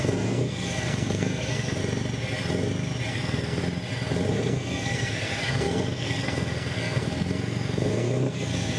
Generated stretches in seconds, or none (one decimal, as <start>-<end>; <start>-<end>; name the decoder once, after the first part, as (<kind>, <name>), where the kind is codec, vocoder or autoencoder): 0.0-1.8 (codec, SNAC); 3.1-3.6; 4.3-8.8